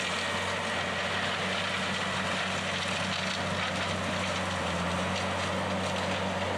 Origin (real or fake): real